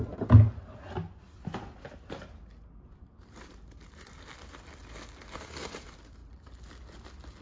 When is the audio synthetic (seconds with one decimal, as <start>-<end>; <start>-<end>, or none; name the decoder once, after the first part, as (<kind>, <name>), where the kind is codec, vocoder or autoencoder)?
none